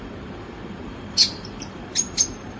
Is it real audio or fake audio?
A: fake